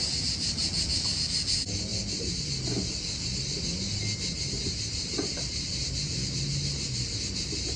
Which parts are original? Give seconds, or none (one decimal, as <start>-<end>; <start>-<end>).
0.0-7.8